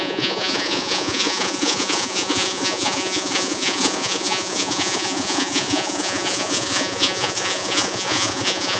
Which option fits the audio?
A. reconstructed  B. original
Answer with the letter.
A